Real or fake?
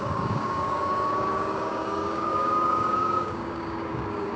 fake